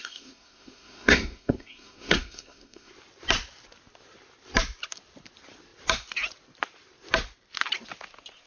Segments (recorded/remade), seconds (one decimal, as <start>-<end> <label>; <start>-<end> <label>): 0.0-2.9 remade; 2.9-8.5 recorded